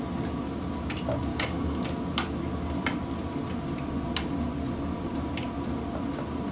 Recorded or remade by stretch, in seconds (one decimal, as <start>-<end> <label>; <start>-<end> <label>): 0.0-1.3 recorded; 1.3-1.8 remade; 1.8-6.5 recorded